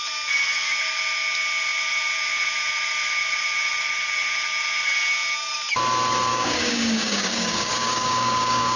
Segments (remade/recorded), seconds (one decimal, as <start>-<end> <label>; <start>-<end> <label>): 0.0-6.3 recorded; 6.3-8.8 remade